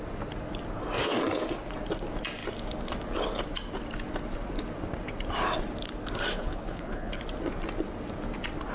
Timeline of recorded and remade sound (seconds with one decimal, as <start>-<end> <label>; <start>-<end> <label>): 0.0-6.4 recorded; 6.4-7.2 remade; 7.2-8.7 recorded